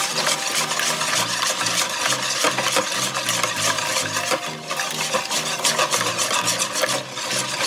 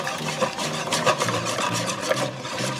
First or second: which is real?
first